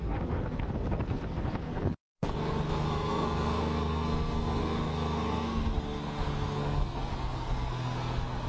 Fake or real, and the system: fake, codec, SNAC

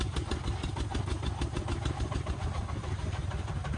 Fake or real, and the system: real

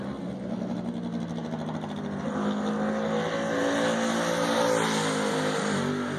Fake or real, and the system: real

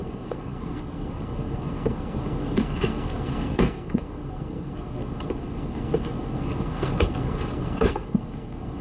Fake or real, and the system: fake, codec, SNAC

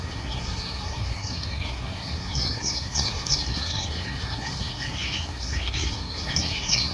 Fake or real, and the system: fake, codec, SNAC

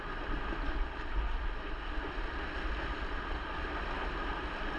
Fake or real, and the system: real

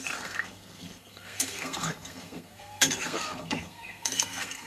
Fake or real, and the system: fake, codec, SNAC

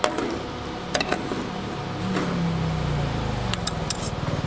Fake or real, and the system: real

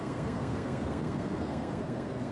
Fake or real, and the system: fake, codec, SNAC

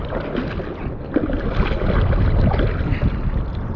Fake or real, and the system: real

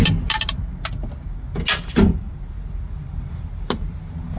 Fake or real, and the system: real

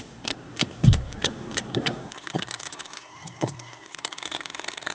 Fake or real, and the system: fake, codec, SNAC